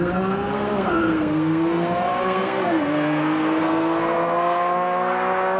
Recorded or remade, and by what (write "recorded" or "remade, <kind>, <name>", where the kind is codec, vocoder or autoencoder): remade, codec, SNAC